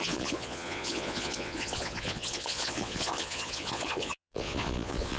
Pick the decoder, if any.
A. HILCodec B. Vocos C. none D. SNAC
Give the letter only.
B